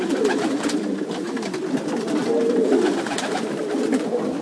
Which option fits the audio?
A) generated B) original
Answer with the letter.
B